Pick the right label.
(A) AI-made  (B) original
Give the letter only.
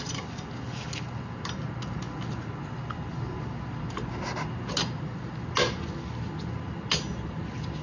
B